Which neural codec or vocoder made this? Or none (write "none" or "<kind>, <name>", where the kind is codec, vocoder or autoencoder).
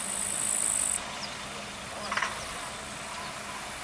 none